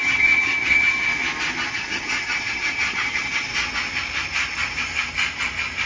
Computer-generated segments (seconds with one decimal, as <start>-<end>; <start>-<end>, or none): 0.0-1.1; 1.7-3.5